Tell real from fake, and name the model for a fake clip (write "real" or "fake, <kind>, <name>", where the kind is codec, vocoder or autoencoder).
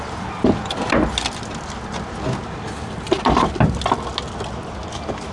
real